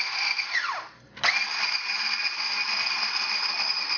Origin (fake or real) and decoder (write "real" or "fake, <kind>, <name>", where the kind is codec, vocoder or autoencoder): real